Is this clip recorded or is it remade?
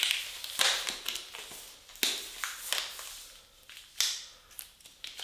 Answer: recorded